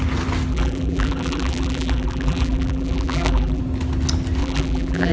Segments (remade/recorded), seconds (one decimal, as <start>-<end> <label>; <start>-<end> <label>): 0.0-0.5 recorded; 0.5-3.6 remade; 3.6-4.4 recorded; 4.4-5.1 remade